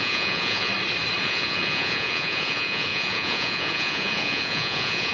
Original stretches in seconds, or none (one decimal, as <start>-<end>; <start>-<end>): 0.7-1.2